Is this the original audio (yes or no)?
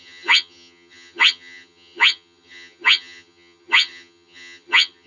no